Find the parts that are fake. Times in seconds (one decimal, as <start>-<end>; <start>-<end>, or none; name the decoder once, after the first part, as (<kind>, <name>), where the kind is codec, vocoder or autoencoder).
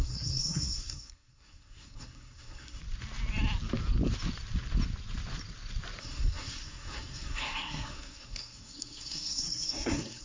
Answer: 0.0-2.8 (codec, SNAC); 6.0-10.2